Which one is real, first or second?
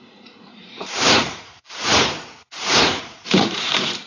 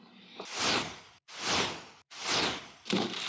second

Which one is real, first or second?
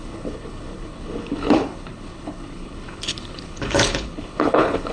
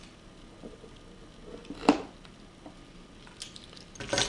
second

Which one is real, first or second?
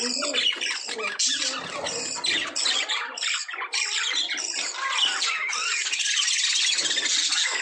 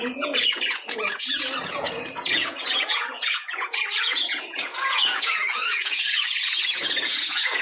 first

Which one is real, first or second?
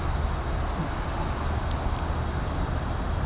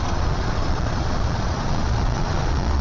first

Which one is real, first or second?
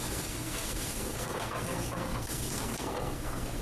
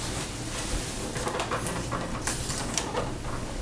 second